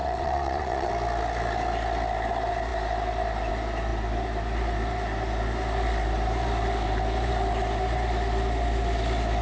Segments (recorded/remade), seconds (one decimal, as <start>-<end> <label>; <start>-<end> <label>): 0.0-0.9 remade; 0.9-9.4 recorded